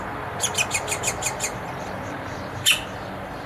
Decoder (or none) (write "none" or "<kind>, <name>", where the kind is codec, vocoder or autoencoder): vocoder, BigVGAN v2